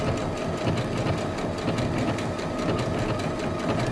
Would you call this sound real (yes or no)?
yes